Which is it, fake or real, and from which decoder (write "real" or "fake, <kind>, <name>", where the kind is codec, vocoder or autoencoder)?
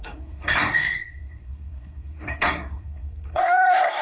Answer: fake, codec, SNAC